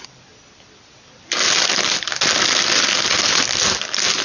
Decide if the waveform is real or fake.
real